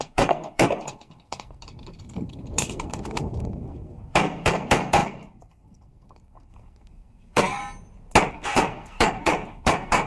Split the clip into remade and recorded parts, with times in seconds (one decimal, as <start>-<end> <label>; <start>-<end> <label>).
0.0-7.6 remade; 7.6-8.3 recorded; 8.3-10.1 remade